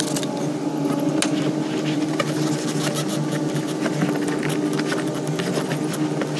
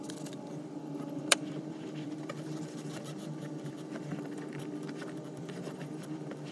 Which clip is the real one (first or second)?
first